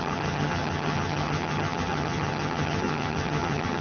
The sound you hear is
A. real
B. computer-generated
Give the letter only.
B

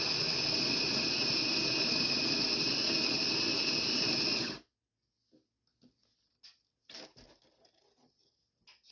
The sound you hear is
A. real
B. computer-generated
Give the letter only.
A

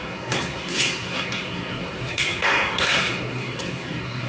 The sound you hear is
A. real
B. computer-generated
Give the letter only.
B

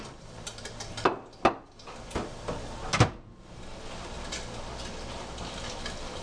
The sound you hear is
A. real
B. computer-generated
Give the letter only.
A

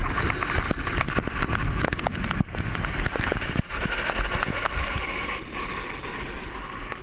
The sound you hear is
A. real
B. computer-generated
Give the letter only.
A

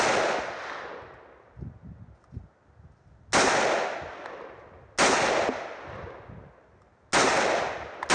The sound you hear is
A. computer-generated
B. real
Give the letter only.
B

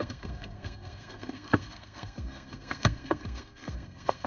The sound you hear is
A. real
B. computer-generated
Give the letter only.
B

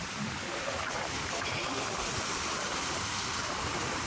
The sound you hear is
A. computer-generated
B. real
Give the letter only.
A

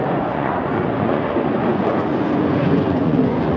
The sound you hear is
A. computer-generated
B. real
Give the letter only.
A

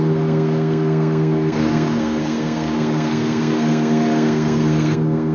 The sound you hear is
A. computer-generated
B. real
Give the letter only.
A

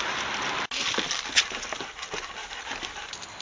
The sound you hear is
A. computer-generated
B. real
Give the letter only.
B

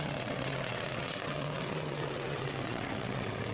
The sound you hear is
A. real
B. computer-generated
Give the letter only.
B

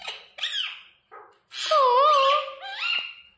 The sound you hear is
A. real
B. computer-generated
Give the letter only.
A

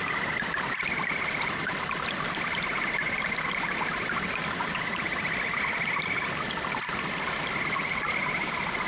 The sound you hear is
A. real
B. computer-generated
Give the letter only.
A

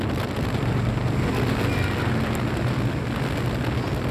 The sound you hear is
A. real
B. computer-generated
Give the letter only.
A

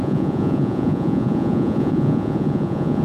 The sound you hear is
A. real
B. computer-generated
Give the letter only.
B